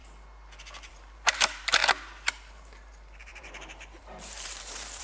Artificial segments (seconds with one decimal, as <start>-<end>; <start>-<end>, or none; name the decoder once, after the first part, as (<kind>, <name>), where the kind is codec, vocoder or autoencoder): 0.9-1.8 (vocoder, BigVGAN v2); 2.5-5.0